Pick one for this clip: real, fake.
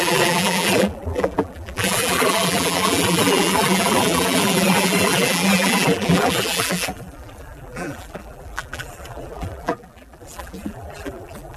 fake